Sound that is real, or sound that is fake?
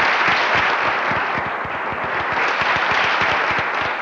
real